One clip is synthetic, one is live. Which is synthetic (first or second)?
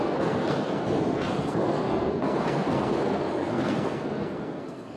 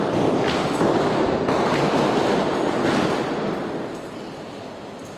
first